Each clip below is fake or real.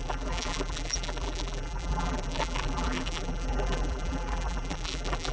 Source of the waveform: fake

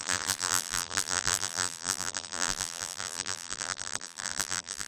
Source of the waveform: fake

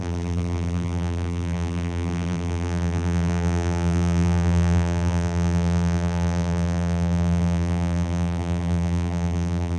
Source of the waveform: fake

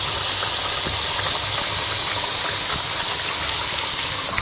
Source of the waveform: real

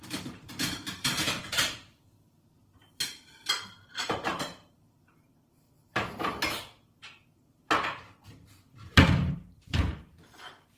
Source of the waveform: fake